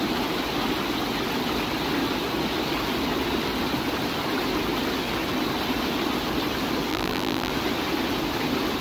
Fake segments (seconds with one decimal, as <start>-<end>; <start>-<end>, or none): 6.9-7.5